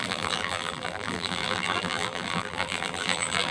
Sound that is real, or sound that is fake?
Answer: fake